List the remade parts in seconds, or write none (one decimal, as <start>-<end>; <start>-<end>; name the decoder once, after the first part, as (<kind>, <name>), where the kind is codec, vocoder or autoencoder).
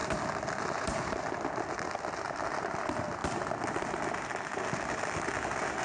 none